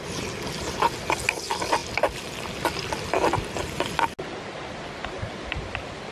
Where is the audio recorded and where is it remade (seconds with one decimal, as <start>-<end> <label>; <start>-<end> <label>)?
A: 0.0-5.0 recorded; 5.0-6.1 remade